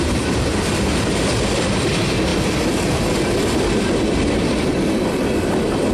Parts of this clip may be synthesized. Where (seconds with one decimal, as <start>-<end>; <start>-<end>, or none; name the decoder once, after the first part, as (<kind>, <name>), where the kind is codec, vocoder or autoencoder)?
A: 2.3-4.3 (vocoder, BigVGAN v2)

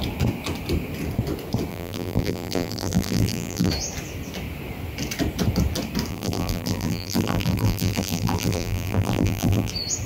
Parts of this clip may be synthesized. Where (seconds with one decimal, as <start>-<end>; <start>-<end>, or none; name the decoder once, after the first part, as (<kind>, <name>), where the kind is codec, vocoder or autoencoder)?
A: 1.7-3.7 (vocoder, BigVGAN v2); 6.1-9.7

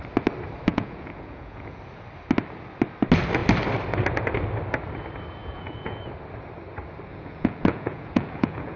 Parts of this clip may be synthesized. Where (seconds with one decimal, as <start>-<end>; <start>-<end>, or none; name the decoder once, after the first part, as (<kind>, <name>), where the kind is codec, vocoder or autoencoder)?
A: 0.7-1.8 (vocoder, Vocos); 5.4-6.0; 7.1-8.8

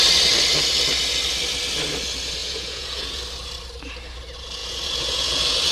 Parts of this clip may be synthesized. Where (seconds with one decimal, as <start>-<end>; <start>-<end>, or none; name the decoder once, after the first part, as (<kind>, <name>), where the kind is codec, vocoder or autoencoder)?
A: 2.4-3.2 (vocoder, Vocos); 4.6-5.7

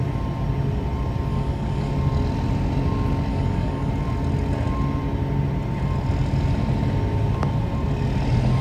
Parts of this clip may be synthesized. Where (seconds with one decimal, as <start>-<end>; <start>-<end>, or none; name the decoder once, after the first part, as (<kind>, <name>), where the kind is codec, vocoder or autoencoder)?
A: 1.3-1.9 (codec, DAC); 3.3-3.9

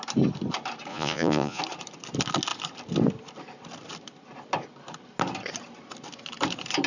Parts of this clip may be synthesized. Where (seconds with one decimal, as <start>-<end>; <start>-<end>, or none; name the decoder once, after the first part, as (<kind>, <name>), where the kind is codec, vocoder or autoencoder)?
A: 0.9-1.6 (vocoder, Vocos)

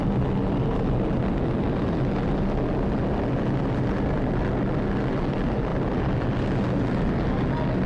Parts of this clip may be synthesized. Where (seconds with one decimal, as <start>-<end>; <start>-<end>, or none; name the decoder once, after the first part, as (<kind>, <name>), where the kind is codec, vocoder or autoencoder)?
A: none

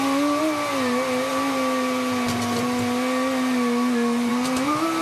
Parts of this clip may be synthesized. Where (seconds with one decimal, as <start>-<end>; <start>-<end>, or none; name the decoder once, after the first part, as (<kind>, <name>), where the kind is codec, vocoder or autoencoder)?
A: none